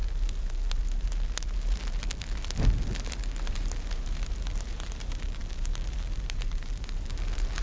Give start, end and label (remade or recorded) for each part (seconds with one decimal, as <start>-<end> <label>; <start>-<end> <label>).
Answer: 0.0-3.0 recorded; 3.0-7.6 remade